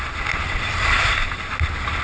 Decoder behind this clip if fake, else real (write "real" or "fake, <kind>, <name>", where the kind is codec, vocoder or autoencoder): real